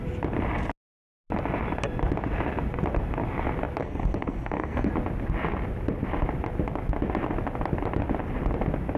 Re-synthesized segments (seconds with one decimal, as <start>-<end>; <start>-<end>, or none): 3.8-4.9